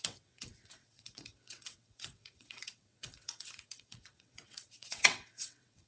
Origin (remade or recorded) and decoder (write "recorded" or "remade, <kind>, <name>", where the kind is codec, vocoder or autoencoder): remade, vocoder, WaveNeXt